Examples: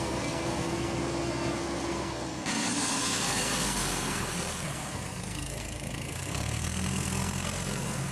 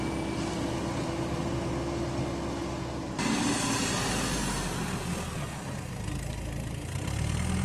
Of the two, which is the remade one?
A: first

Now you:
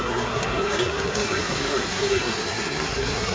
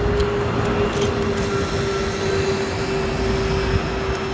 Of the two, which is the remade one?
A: first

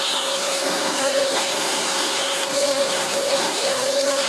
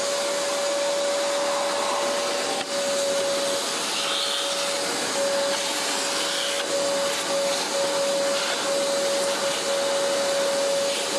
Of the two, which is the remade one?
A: first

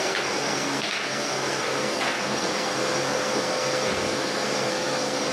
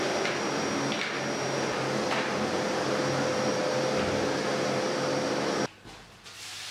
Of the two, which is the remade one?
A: first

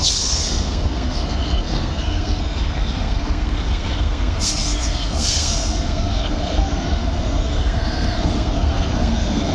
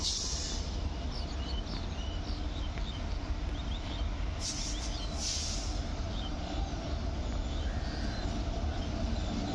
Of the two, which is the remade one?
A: first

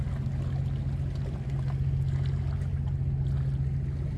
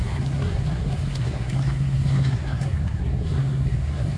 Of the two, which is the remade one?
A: second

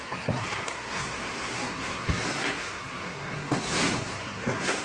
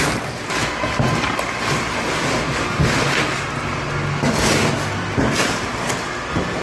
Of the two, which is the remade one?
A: first